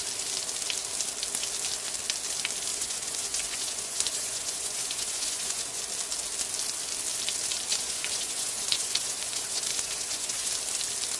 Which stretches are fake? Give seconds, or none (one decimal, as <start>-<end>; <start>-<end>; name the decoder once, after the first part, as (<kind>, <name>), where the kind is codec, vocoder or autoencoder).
2.7-5.8 (vocoder, Vocos); 7.7-10.5